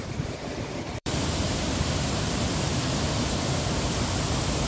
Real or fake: fake